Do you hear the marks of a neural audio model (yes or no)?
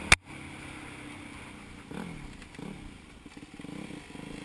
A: no